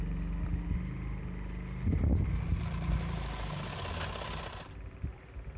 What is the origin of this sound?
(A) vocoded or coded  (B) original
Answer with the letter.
B